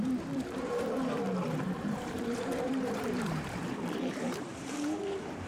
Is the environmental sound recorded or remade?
remade